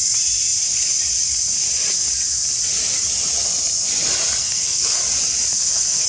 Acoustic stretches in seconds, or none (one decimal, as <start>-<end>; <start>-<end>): 0.0-4.4; 5.0-5.5